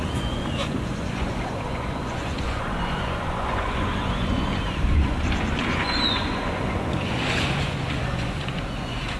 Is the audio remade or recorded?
remade